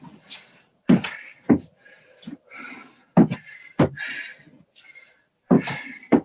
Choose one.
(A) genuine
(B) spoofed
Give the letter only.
A